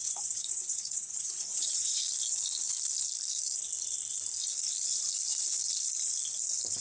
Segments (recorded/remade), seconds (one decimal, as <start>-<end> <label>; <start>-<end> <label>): 0.0-2.0 remade; 2.0-6.8 recorded